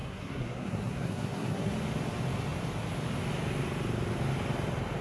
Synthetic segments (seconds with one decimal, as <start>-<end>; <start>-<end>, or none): 0.0-1.7